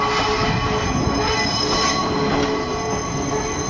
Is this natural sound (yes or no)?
yes